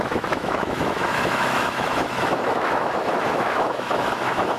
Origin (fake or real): fake